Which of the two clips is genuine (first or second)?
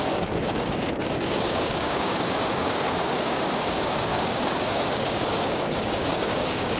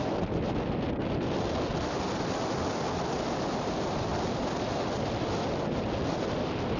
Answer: second